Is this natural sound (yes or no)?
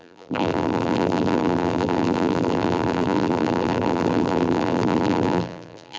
no